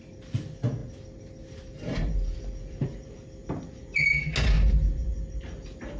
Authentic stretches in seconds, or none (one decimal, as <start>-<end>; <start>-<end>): 0.0-6.0